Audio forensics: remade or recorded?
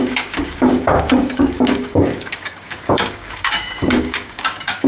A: remade